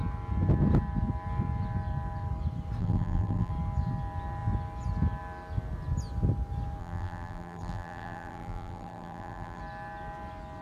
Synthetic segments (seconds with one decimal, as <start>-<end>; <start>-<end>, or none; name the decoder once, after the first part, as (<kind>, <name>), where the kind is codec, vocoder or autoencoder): 2.8-3.5 (vocoder, BigVGAN v2); 6.8-9.6

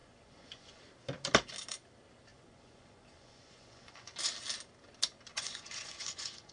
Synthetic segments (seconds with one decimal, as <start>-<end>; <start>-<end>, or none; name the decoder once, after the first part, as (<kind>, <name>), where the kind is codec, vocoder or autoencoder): 0.0-0.8 (vocoder, Vocos); 2.3-4.1; 5.3-6.5

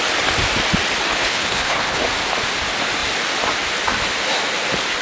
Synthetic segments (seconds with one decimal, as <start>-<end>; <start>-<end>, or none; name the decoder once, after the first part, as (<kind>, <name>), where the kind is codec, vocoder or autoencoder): 1.1-2.0 (codec, HILCodec)

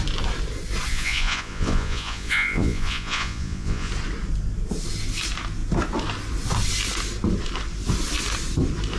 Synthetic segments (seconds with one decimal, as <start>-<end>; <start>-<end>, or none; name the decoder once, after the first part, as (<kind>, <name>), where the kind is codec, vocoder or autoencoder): 0.9-3.9 (vocoder, Vocos)

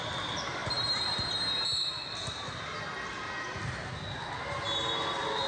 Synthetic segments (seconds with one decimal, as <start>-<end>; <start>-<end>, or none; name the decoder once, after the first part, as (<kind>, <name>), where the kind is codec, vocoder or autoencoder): none

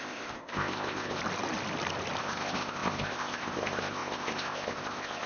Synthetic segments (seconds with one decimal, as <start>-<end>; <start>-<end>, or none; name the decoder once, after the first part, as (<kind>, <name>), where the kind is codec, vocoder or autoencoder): 0.0-1.2 (codec, ZipCodec); 2.2-5.3

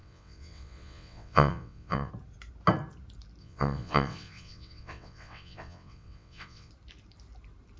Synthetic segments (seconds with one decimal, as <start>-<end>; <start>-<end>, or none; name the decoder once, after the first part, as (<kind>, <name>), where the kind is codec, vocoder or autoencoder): 0.0-2.1 (vocoder, WaveNeXt); 3.4-6.7